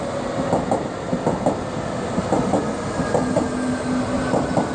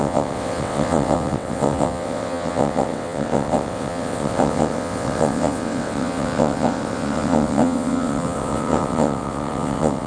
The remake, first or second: second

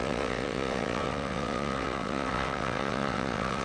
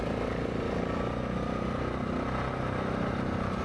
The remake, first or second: first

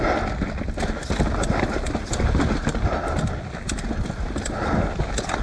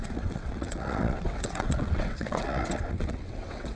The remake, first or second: second